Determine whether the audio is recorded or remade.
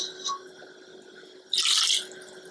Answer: recorded